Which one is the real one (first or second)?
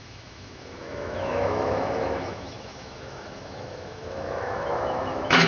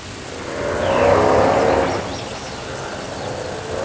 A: second